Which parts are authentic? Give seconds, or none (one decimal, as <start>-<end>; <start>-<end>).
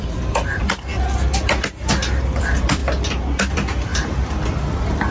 0.9-2.4; 2.8-3.5; 3.9-5.1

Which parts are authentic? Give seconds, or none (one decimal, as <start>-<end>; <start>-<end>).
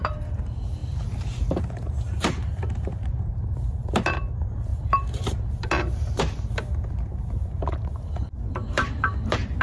none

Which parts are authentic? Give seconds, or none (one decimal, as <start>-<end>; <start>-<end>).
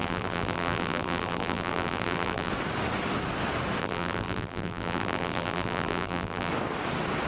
2.5-3.8; 6.5-7.3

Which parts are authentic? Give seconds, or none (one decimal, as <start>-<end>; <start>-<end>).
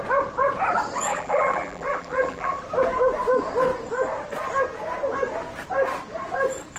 0.0-1.1; 2.6-6.8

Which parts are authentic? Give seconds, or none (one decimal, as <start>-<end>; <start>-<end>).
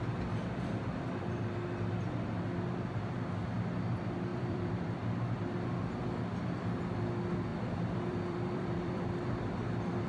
0.0-4.3; 5.0-7.5; 9.5-10.1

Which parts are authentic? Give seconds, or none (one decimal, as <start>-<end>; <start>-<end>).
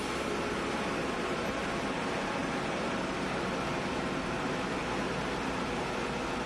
0.0-2.4; 3.1-6.5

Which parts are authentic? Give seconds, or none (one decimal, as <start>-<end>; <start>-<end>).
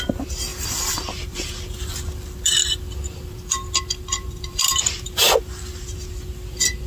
0.0-0.5; 1.5-2.6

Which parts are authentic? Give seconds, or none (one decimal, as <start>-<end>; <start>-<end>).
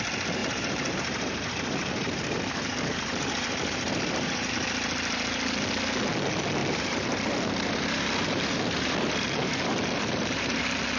0.0-0.4; 4.5-6.6; 10.6-11.0